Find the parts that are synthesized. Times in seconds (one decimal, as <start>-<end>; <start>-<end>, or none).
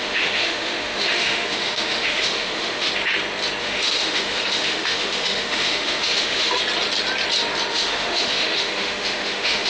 0.0-2.9; 3.6-6.6; 7.7-9.7